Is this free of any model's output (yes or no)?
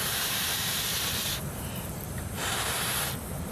yes